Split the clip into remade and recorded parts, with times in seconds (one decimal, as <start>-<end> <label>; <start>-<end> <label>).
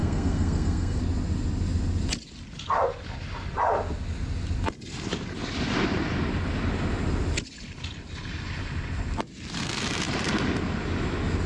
0.0-1.0 remade; 1.0-11.5 recorded